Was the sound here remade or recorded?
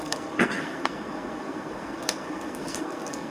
remade